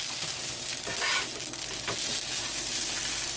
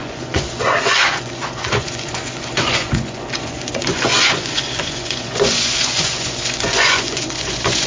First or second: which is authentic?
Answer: first